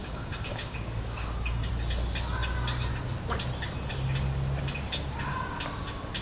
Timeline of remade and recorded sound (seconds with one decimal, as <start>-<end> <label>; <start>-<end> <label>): 0.0-1.7 remade; 1.7-6.2 recorded

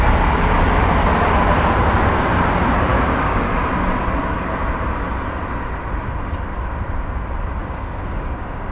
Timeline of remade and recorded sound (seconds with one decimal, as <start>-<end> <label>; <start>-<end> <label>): 0.0-2.9 recorded; 2.9-3.4 remade; 3.4-7.6 recorded; 7.6-8.7 remade

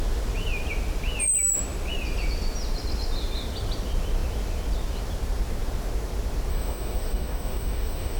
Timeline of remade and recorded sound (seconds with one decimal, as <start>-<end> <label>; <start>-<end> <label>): 0.0-6.5 recorded; 6.5-8.2 remade

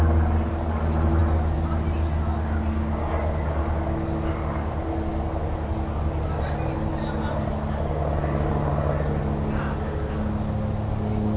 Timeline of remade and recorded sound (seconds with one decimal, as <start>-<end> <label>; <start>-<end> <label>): 0.0-11.4 recorded